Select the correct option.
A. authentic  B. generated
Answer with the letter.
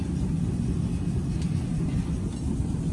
A